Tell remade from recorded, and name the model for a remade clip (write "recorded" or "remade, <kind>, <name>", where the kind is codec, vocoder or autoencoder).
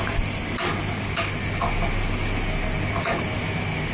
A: recorded